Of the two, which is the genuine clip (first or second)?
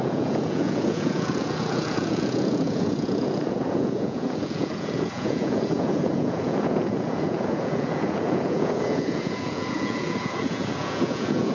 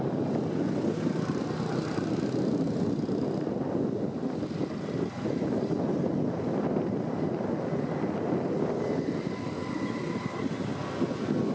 second